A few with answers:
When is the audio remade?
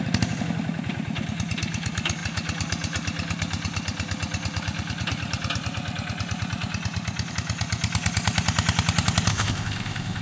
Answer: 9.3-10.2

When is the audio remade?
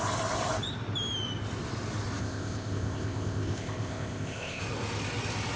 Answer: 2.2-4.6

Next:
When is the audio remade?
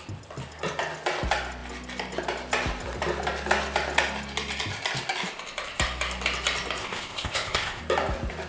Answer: 6.8-7.8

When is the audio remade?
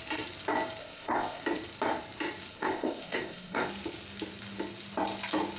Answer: 0.8-1.4; 2.5-3.7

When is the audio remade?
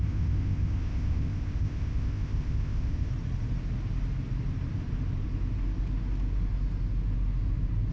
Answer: 0.0-3.1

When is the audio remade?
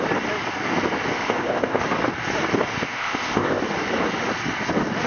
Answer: 1.1-1.8; 2.8-3.6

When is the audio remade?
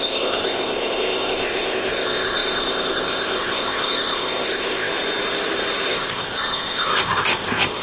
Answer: 0.0-4.9; 5.9-7.8